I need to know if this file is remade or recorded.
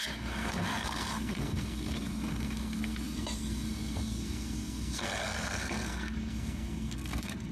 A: remade